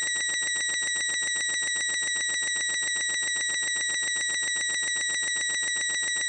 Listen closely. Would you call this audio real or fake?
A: real